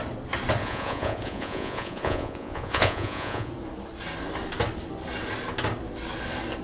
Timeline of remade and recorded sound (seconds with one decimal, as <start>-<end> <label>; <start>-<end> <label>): 0.0-0.6 recorded; 0.6-3.5 remade; 3.5-6.6 recorded